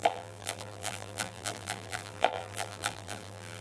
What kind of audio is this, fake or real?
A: fake